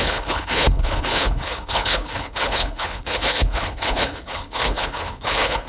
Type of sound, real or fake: fake